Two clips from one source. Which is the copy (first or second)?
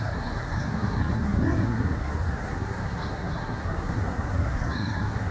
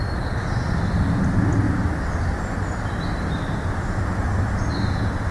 first